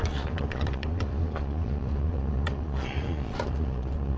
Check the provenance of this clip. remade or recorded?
remade